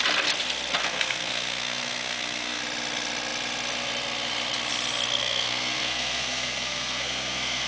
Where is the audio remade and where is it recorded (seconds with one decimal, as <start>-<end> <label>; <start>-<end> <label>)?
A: 0.0-0.8 recorded; 0.8-2.6 remade; 2.6-5.2 recorded; 5.2-7.7 remade